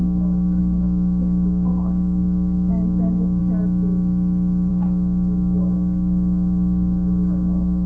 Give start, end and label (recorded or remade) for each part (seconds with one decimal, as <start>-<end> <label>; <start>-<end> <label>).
0.0-3.4 remade; 3.4-4.7 recorded; 4.7-7.9 remade